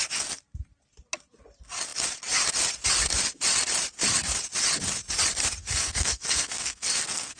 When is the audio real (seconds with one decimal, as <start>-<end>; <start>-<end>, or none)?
0.0-5.6